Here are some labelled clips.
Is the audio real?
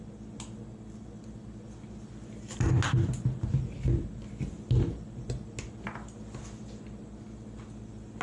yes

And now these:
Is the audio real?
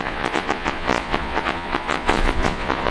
no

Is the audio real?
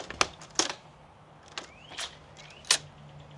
yes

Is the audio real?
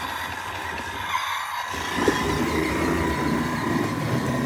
yes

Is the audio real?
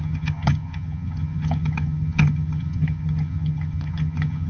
no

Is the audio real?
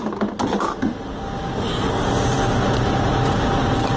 yes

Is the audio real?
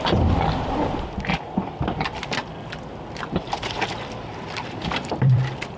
no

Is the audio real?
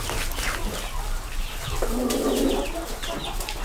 yes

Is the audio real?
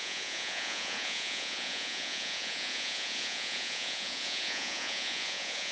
no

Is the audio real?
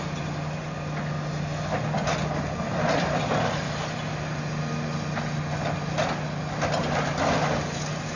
yes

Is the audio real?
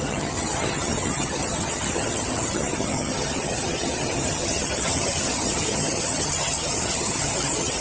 no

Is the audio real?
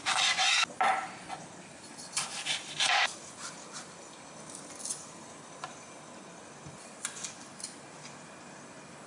yes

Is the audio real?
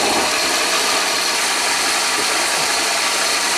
no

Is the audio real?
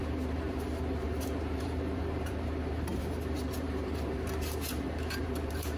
no